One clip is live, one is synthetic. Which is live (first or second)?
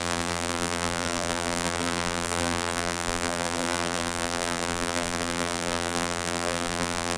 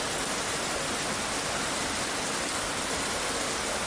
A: second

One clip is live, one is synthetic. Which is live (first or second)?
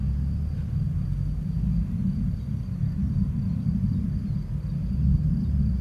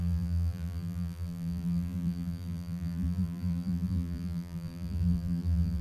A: first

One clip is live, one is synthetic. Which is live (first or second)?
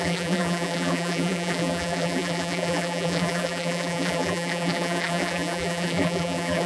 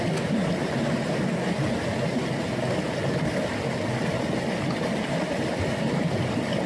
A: second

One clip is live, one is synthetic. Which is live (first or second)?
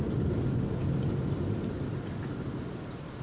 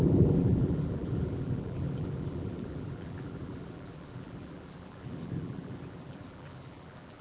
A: first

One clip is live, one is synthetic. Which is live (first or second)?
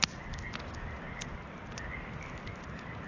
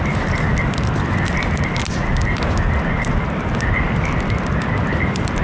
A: second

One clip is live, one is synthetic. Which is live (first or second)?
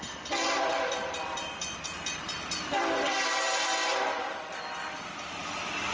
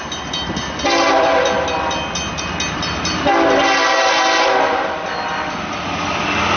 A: second